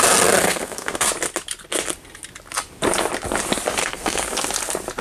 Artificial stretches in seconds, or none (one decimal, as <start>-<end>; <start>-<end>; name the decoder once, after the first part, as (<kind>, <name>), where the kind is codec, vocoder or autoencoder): 0.4-1.1 (codec, SNAC); 3.8-4.3